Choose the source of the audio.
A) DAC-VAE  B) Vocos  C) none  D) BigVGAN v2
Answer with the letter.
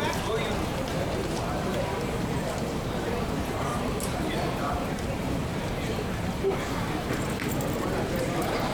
D